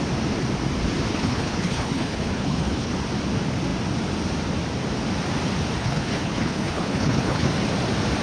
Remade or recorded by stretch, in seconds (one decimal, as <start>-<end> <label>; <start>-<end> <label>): 0.0-1.1 recorded; 1.1-2.9 remade; 2.9-5.8 recorded; 5.8-7.5 remade; 7.5-8.2 recorded